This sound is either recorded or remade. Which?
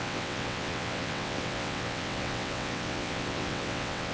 remade